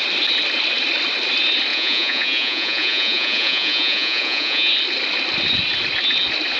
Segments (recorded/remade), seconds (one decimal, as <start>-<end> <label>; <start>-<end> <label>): 0.0-1.7 recorded; 1.7-4.7 remade; 4.7-6.6 recorded